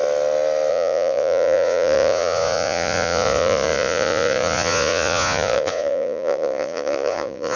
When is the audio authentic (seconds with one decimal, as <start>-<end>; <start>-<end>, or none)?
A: 0.0-0.7

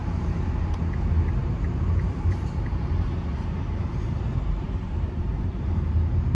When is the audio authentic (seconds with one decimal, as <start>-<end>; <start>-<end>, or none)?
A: 0.8-1.4; 2.5-3.3; 5.8-6.3